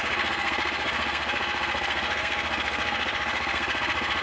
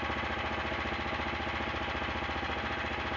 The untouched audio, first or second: second